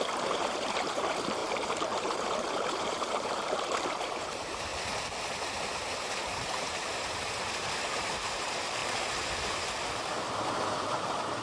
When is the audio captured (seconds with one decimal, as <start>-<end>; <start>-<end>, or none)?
4.7-5.7; 8.8-10.9